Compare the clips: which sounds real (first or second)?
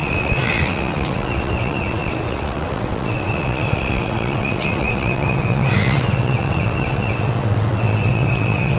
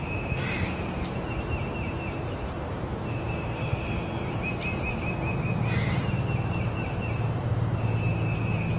second